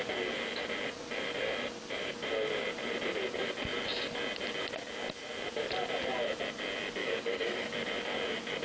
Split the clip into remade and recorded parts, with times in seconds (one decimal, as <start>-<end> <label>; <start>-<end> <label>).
0.0-7.0 recorded; 7.0-7.7 remade; 7.7-8.6 recorded

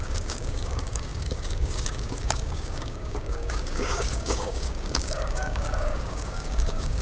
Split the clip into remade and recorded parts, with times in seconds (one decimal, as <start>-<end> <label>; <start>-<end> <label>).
0.0-7.0 remade

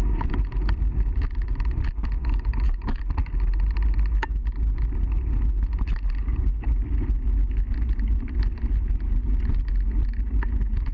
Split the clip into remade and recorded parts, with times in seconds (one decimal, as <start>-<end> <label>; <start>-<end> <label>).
0.0-2.2 recorded; 2.2-3.0 remade; 3.0-10.9 recorded

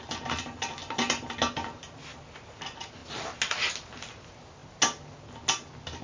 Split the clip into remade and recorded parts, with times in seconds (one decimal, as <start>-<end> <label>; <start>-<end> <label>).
0.0-6.0 recorded

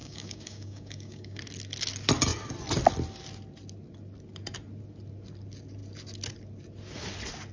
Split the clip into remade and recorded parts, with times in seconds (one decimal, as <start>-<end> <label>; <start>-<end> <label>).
0.0-1.4 remade; 1.4-7.5 recorded

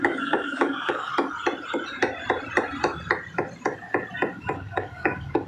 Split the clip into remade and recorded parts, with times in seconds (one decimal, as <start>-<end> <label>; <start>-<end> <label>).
0.0-1.1 remade; 1.1-4.4 recorded; 4.4-5.5 remade